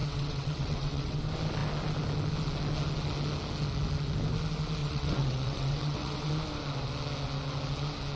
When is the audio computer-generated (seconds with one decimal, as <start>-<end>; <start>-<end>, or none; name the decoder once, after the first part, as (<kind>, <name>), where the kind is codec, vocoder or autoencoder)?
0.0-1.2 (vocoder, WaveNeXt); 4.8-6.3